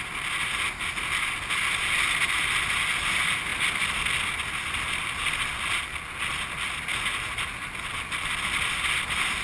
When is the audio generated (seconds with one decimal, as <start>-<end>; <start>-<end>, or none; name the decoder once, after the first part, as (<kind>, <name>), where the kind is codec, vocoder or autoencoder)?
none